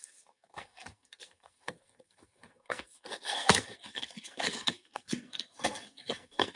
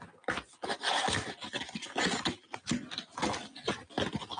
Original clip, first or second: second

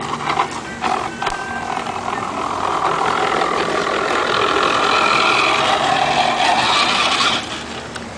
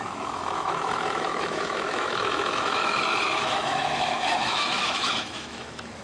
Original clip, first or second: first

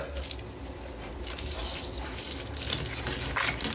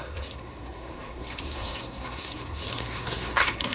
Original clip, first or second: first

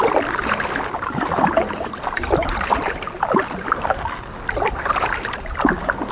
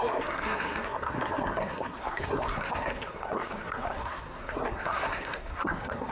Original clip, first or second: first